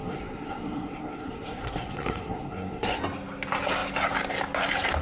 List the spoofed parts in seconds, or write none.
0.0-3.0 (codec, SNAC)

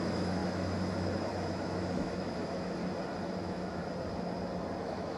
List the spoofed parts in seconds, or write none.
0.0-2.8 (autoencoder, DAC-VAE); 3.4-3.8; 4.8-5.2

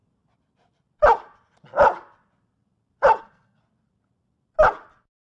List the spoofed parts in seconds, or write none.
3.2-3.6 (codec, SNAC)

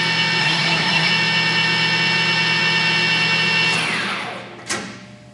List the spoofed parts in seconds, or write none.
0.4-1.1 (codec, SNAC)

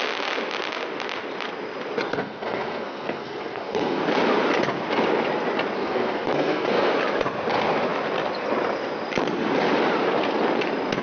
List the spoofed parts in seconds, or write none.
2.1-4.0 (codec, SNAC); 5.8-6.9

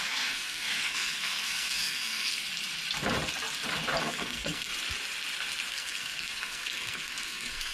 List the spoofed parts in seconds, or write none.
0.0-2.4 (codec, SNAC); 4.0-4.7; 5.7-7.7

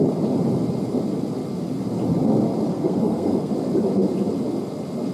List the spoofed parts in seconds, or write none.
2.7-3.5 (codec, SNAC)

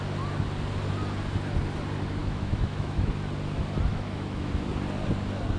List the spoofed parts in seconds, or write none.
2.2-3.1 (autoencoder, DAC-VAE); 3.9-4.7